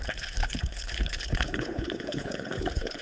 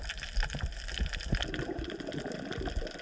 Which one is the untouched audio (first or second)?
second